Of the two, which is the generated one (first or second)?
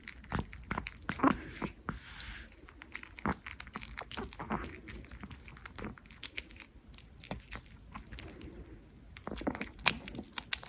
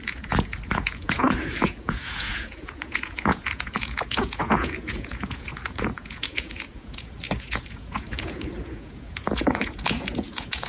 second